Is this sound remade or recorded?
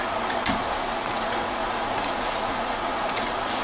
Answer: remade